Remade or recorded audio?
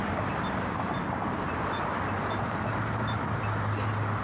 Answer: recorded